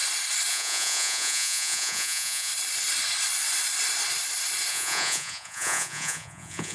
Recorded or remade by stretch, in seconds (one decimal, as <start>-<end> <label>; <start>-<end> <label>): 0.0-0.5 recorded; 0.5-2.5 remade; 2.5-4.7 recorded; 4.7-6.7 remade